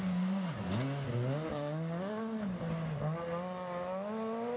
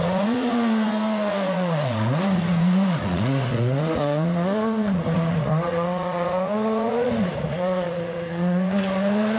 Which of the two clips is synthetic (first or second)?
second